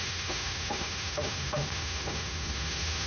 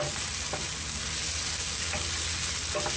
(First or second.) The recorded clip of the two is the second